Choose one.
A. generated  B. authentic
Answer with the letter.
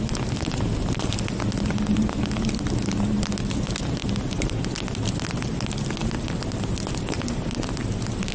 B